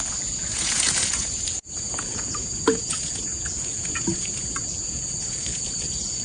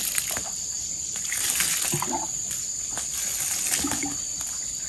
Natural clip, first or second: second